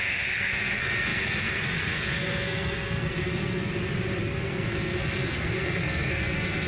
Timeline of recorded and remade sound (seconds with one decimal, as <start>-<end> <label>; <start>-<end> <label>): 0.0-3.7 remade; 3.7-4.2 recorded; 4.2-6.7 remade